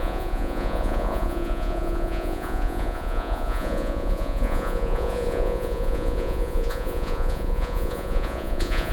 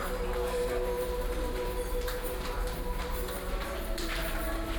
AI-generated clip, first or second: first